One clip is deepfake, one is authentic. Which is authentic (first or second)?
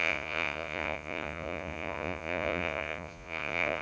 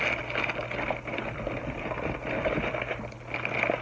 second